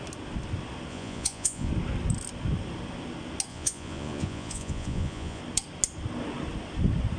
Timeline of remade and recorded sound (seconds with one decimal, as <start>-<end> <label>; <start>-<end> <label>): 0.0-0.9 recorded; 0.9-1.7 remade; 1.7-3.5 recorded; 3.5-5.4 remade; 5.4-7.2 recorded